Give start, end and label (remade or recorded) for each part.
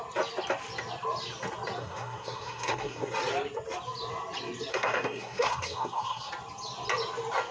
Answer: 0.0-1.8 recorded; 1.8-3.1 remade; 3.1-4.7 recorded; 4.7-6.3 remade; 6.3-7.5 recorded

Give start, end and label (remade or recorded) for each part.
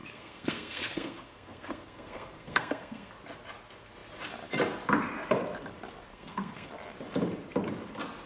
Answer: 0.0-3.1 remade; 3.1-6.1 recorded; 6.1-6.7 remade; 6.7-8.3 recorded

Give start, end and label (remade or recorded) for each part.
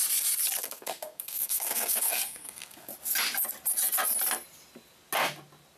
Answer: 0.0-0.6 recorded; 0.6-2.9 remade; 2.9-5.8 recorded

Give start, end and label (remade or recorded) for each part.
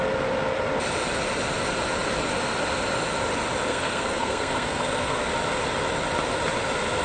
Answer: 0.0-3.7 recorded; 3.7-5.3 remade; 5.3-7.0 recorded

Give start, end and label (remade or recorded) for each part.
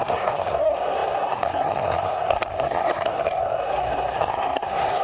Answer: 0.0-5.0 remade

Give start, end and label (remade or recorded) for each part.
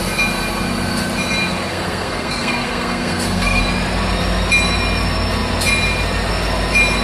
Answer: 0.0-1.7 recorded; 1.7-3.6 remade; 3.6-7.0 recorded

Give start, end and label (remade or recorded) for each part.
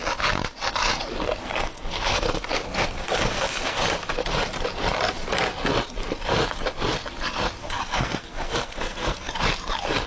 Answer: 0.0-1.4 recorded; 1.4-3.8 remade; 3.8-7.6 recorded; 7.6-9.3 remade; 9.3-10.1 recorded